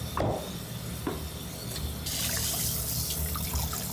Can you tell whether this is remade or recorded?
recorded